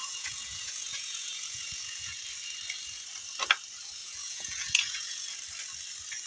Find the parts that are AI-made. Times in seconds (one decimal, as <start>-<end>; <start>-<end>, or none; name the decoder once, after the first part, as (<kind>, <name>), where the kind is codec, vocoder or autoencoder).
0.0-2.2 (vocoder, Vocos); 4.0-5.4